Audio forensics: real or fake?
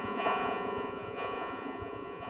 fake